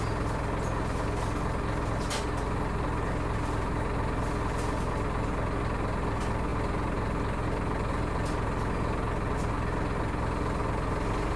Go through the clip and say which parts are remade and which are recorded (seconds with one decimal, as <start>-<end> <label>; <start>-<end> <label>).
0.0-11.4 recorded